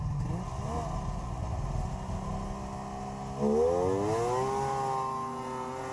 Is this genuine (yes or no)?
yes